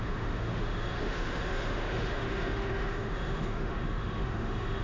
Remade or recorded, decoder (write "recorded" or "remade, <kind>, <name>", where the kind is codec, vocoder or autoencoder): remade, autoencoder, DAC-VAE